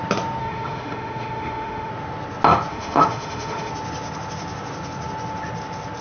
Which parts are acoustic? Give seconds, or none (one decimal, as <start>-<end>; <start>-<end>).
0.0-0.4; 1.9-2.7; 3.7-6.0